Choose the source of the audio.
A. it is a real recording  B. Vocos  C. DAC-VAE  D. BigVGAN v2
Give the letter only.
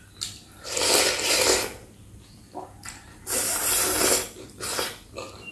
A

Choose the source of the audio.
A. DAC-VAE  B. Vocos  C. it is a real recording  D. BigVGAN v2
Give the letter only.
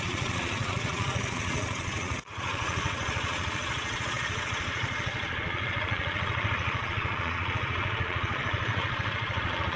B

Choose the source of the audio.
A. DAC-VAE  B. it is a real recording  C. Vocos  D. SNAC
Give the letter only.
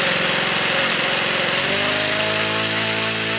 B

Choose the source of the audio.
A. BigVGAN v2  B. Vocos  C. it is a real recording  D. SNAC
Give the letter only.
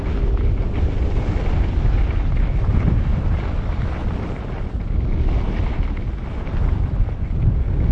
C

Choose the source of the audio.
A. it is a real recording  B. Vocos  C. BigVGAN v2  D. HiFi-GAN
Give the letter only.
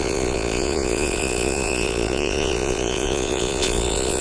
B